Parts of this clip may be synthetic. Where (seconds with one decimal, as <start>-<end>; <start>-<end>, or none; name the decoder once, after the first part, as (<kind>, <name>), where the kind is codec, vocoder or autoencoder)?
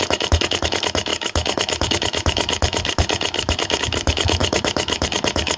0.0-5.6 (autoencoder, DAC-VAE)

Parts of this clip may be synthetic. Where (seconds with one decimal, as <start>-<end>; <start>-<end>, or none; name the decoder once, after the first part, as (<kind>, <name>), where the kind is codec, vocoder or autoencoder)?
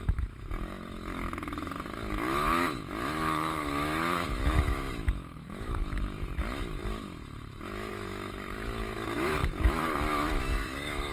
0.0-11.1 (autoencoder, DAC-VAE)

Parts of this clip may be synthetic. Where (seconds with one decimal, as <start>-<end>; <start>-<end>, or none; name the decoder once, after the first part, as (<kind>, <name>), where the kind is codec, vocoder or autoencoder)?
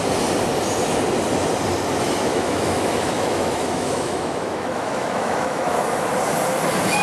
2.3-6.1 (autoencoder, DAC-VAE)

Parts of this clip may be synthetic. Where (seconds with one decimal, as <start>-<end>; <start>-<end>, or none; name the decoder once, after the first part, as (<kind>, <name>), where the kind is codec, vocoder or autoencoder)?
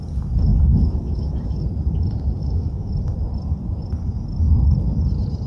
0.5-1.6 (autoencoder, DAC-VAE); 2.4-2.9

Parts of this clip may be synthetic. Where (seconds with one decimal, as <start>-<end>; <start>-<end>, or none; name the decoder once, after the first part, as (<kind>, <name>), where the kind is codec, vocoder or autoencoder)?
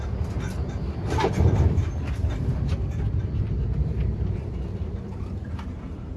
none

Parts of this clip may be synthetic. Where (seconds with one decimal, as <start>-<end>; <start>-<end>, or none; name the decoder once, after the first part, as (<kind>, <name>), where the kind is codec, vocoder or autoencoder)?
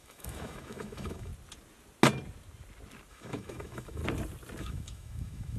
0.0-1.3 (autoencoder, DAC-VAE); 3.1-4.0; 4.6-5.6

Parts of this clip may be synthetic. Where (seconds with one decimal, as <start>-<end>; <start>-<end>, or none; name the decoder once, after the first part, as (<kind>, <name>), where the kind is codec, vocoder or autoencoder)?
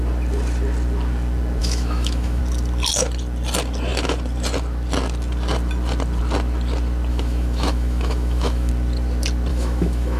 1.6-2.4 (autoencoder, DAC-VAE); 7.1-8.7; 9.5-10.2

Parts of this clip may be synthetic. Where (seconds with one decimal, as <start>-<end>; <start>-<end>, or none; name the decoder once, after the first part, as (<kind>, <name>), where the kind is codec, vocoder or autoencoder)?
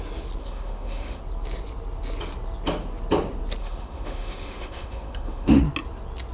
0.4-1.2 (autoencoder, DAC-VAE); 3.6-5.6